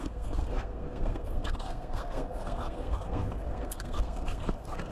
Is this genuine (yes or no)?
no